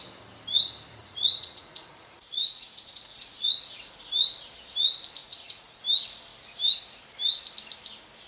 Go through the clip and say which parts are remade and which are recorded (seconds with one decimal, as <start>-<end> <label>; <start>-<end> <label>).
0.0-1.0 recorded; 1.0-3.5 remade; 3.5-5.2 recorded; 5.2-5.8 remade; 5.8-8.3 recorded